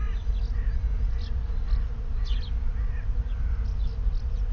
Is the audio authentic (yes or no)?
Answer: yes